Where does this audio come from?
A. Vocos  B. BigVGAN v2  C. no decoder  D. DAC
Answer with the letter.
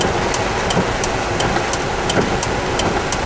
C